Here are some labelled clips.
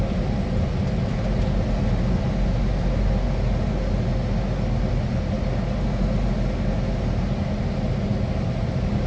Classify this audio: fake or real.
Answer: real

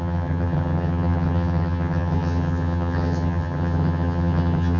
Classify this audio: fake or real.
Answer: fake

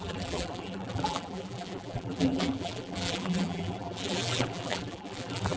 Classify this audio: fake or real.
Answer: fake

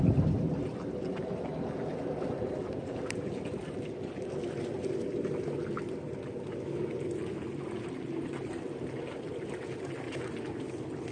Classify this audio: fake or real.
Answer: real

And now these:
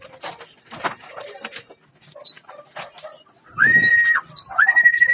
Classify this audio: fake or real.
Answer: real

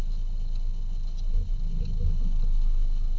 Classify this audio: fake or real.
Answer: real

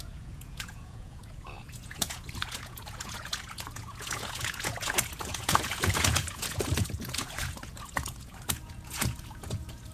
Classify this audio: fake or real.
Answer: fake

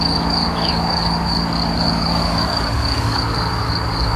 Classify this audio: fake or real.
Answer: fake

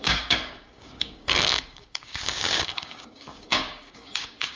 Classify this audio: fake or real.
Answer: fake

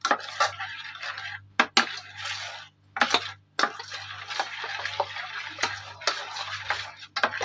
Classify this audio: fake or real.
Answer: real